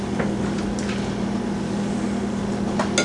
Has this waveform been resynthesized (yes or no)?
no